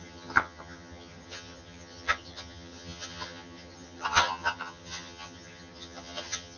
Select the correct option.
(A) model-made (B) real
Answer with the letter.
A